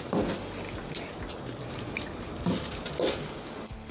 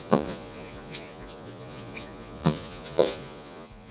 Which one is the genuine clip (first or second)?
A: first